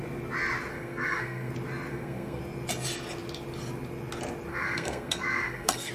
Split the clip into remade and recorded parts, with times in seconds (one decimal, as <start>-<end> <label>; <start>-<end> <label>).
0.0-0.7 recorded; 0.7-1.5 remade; 1.5-1.9 recorded; 1.9-2.4 remade; 2.4-4.5 recorded; 4.5-5.9 remade